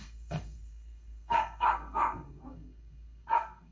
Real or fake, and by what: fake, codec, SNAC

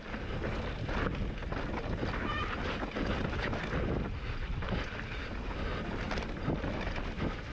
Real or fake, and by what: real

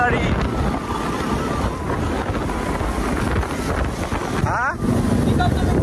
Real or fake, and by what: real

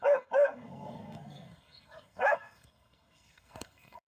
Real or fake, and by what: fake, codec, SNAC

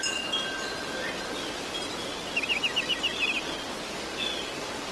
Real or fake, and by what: real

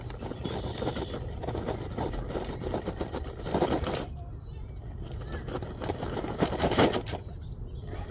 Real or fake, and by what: real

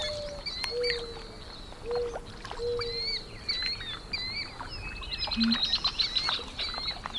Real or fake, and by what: real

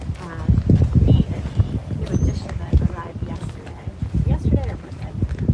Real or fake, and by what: real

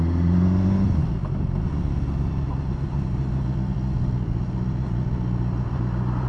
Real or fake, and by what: real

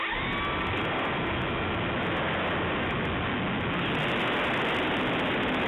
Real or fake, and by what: real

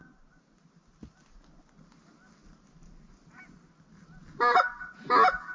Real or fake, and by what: real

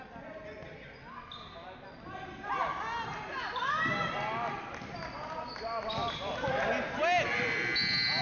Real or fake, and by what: real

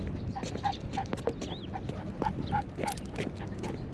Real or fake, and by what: real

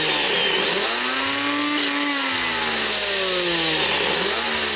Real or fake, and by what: real